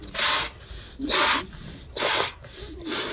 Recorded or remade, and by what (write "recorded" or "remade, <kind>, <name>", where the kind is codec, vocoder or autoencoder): recorded